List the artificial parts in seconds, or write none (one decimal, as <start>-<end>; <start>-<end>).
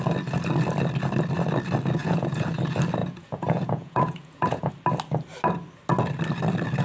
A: 2.0-2.5; 3.0-4.7